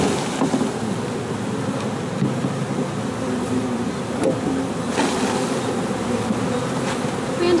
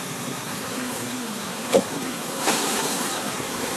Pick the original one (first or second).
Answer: first